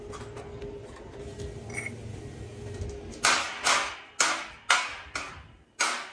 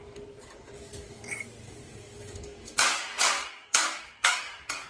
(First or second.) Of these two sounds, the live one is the first